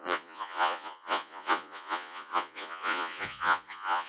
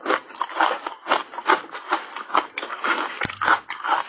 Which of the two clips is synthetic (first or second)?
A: first